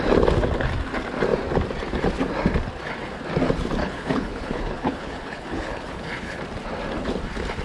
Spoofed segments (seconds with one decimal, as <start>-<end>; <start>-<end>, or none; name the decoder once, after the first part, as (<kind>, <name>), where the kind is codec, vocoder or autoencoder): 3.8-6.4 (codec, HILCodec)